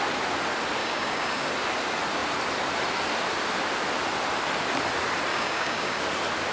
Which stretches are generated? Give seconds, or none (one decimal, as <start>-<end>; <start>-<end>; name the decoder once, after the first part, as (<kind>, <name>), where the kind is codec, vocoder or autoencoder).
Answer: 0.8-1.5 (codec, DAC); 5.3-6.0